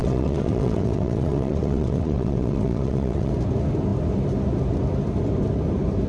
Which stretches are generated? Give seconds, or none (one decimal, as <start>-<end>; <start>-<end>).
0.0-3.3